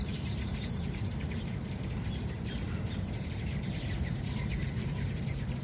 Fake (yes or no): yes